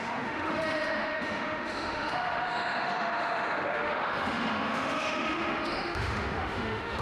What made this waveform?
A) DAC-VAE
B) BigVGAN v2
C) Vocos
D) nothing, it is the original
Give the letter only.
A